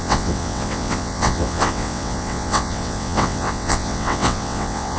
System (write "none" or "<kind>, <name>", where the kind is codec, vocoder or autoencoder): vocoder, WaveNeXt